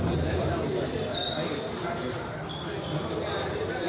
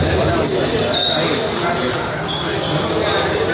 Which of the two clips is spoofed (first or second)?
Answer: first